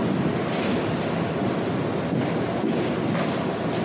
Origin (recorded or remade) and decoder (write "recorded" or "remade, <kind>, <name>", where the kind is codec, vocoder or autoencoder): recorded